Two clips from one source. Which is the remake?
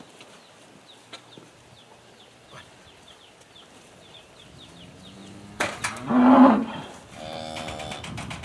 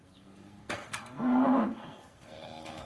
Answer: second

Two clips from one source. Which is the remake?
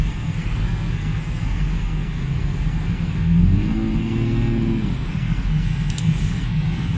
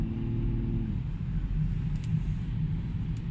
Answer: first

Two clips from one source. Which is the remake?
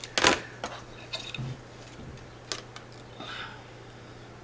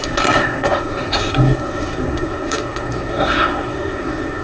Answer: second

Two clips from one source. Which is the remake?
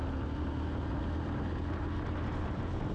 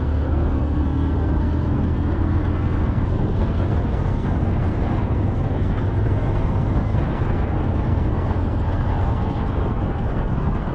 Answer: second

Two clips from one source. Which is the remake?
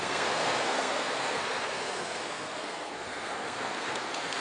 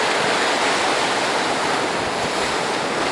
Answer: first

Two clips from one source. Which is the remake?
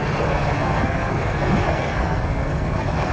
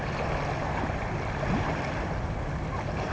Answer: first